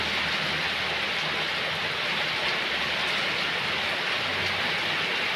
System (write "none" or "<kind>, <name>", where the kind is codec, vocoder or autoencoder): none